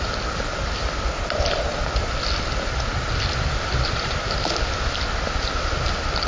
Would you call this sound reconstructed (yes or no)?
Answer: no